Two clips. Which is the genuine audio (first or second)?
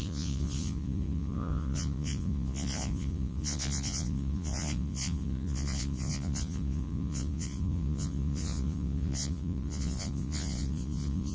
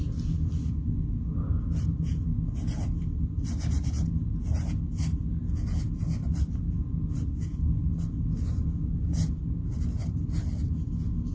second